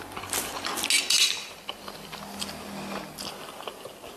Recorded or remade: recorded